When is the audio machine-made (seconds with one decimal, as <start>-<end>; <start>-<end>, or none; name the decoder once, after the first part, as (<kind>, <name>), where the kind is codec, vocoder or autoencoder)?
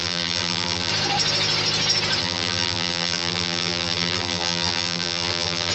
0.0-0.9 (vocoder, BigVGAN v2); 2.2-5.7